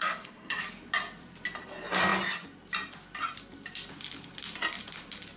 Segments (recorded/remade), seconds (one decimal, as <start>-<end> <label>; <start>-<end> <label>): 0.0-0.6 remade; 0.6-5.4 recorded